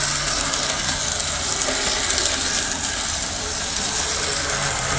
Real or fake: real